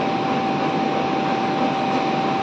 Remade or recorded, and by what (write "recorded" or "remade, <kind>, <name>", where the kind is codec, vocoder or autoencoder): recorded